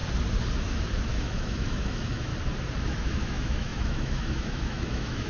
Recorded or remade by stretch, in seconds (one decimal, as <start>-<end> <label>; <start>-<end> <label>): 0.0-1.1 recorded; 1.1-2.3 remade; 2.3-2.8 recorded; 2.8-5.3 remade